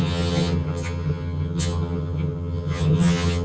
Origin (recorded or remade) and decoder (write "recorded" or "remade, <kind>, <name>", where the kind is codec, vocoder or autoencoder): remade, vocoder, HiFi-GAN